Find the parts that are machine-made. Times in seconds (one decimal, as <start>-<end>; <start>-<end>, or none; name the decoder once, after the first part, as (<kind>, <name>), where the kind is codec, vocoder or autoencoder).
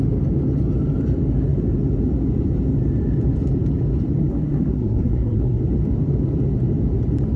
4.2-5.6 (codec, SNAC)